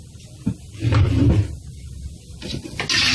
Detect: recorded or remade recorded